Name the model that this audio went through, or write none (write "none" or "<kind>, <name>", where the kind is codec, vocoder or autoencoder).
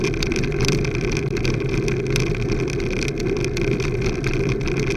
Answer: none